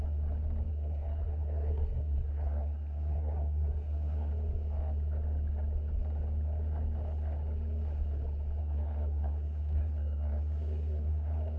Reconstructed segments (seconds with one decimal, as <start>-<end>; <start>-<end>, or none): 0.7-4.3; 8.6-11.6